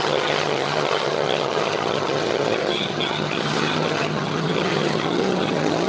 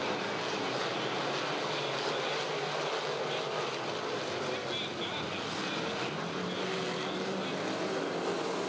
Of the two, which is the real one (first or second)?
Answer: second